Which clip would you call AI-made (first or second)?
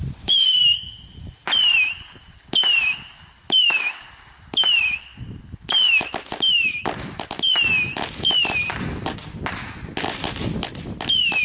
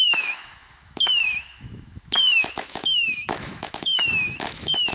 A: second